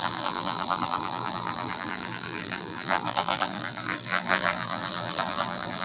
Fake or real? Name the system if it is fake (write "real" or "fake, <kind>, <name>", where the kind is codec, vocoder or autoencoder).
fake, vocoder, BigVGAN v2